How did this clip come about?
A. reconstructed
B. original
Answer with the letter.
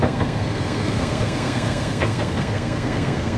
A